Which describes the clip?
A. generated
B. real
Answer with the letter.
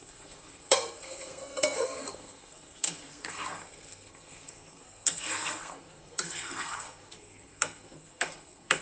A